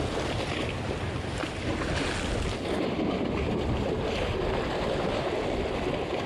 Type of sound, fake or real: real